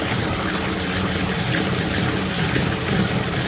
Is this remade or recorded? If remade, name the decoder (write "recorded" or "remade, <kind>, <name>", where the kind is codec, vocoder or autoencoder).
recorded